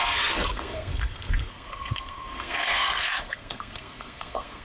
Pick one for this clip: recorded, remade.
remade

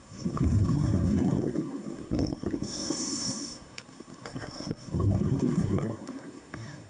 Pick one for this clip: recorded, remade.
remade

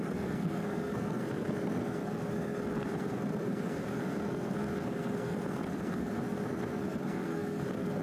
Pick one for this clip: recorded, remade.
remade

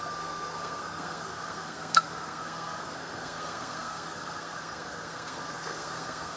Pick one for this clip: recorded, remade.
remade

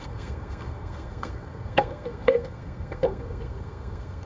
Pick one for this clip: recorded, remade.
remade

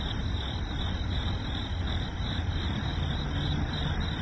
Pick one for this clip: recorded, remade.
recorded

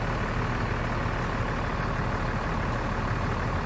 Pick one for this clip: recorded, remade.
recorded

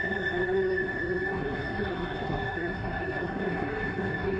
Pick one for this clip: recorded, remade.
remade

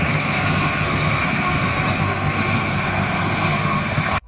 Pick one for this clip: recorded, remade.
remade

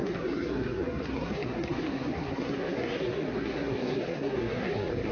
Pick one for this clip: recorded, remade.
remade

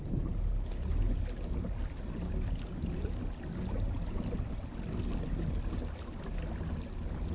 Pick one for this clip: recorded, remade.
recorded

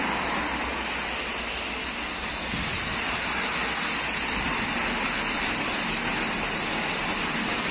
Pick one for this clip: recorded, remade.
recorded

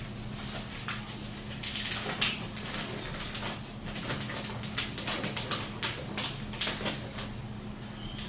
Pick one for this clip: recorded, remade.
recorded